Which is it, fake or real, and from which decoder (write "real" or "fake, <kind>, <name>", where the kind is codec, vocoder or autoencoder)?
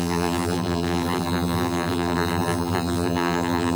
fake, vocoder, BigVGAN v2